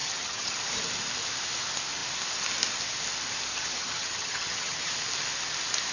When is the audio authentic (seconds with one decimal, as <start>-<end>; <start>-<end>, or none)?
0.6-3.5; 4.9-5.9